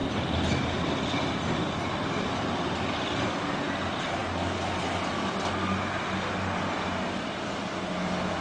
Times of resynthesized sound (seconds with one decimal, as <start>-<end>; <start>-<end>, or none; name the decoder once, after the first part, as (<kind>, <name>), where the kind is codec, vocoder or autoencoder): none